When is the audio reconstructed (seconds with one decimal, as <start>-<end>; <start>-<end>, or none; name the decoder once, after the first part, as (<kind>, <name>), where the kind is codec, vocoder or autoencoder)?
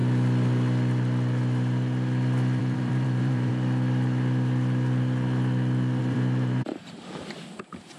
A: 2.6-3.5 (vocoder, BigVGAN v2); 6.0-8.0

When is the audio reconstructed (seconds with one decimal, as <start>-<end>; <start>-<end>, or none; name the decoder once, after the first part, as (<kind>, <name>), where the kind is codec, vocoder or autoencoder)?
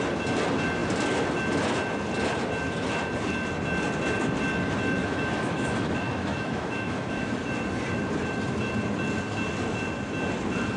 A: 5.0-7.3 (autoencoder, DAC-VAE)